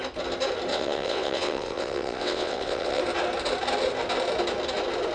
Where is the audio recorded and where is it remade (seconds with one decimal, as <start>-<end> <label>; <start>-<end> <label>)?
0.0-0.7 recorded; 0.7-3.0 remade; 3.0-5.1 recorded